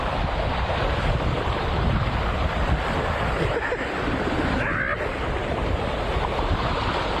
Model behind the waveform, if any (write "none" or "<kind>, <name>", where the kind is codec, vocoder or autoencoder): none